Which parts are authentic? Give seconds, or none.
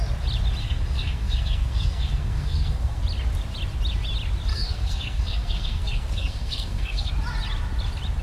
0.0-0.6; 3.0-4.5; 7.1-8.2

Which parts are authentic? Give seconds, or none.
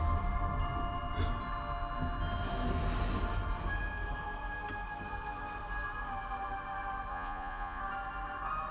0.0-7.1; 7.8-8.7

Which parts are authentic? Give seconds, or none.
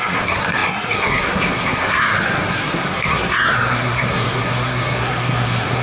none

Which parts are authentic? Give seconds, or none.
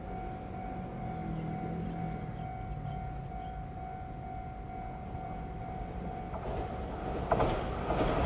0.0-8.3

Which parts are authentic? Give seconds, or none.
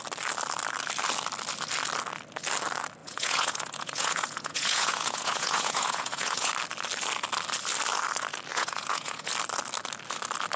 0.0-3.0; 6.5-8.5; 9.3-10.6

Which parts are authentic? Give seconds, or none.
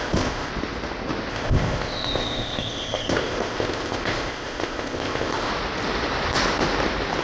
0.5-1.3; 5.5-7.2